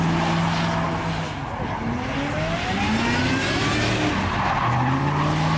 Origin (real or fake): real